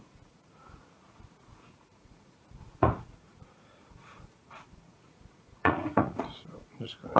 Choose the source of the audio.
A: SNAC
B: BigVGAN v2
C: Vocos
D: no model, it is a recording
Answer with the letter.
C